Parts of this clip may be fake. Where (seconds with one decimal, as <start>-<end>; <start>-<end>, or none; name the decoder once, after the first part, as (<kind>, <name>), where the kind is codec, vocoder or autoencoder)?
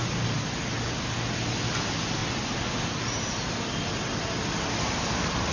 none